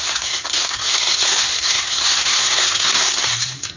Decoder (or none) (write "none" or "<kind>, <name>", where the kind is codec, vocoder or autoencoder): codec, SNAC